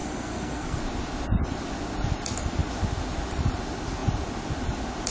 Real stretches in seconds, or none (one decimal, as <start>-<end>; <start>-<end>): 0.8-5.1